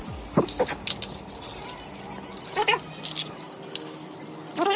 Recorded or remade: recorded